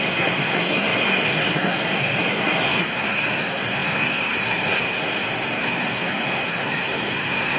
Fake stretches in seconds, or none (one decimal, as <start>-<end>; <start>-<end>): 0.0-7.6